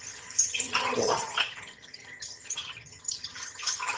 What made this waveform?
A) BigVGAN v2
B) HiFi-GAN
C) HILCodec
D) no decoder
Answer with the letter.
B